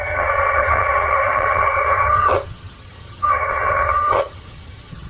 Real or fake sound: fake